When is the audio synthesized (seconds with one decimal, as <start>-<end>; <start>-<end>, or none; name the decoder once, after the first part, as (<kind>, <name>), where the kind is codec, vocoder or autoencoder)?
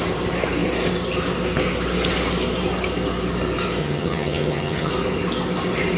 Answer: 3.8-4.9 (vocoder, HiFi-GAN)